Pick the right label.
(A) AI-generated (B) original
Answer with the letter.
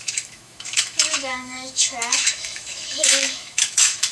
A